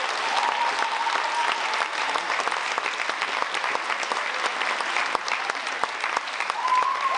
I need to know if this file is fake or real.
real